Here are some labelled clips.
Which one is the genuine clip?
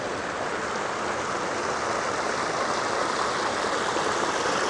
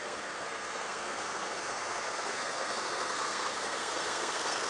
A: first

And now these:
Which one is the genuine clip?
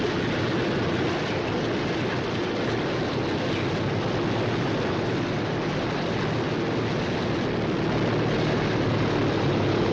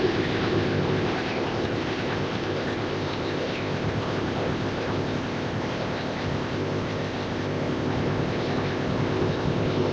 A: first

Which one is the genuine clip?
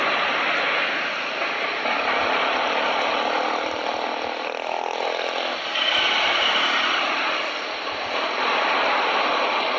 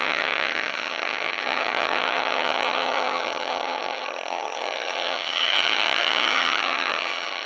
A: first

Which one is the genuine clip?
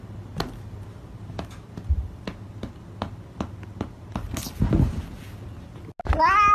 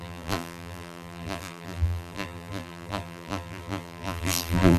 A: first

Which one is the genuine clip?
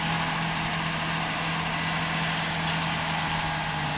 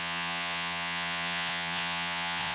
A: first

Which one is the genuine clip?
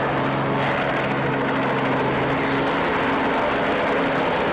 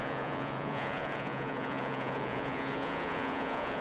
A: first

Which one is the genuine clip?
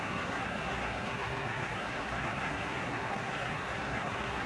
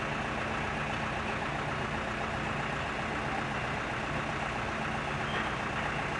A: second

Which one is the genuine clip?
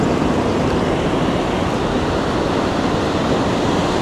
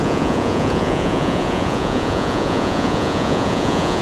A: first